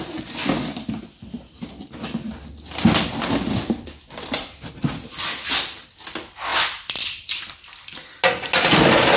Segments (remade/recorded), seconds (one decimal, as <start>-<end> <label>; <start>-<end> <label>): 0.0-9.2 recorded